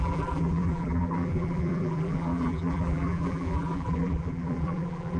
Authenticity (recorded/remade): remade